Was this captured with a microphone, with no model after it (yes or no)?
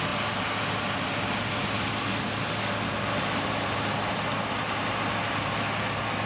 yes